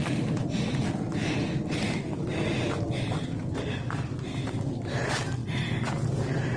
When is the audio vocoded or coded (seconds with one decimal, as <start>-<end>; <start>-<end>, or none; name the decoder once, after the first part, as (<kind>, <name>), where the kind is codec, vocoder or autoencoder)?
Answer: none